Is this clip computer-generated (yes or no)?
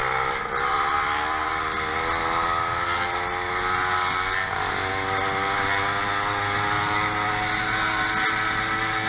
no